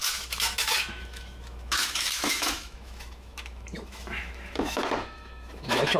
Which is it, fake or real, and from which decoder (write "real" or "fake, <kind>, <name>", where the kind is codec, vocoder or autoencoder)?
fake, autoencoder, DAC-VAE